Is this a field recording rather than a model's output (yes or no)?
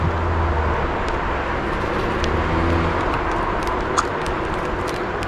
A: yes